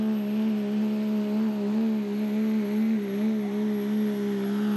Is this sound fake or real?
real